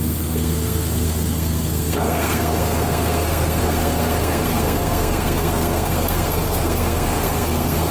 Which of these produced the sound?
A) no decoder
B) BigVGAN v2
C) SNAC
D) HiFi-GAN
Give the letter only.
C